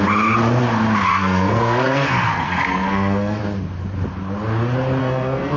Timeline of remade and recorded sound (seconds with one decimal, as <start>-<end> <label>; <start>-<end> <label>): 0.0-1.1 recorded; 1.1-3.4 remade; 3.4-5.0 recorded; 5.0-5.6 remade